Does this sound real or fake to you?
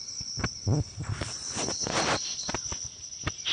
real